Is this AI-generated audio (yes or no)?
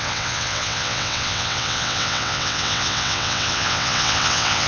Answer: yes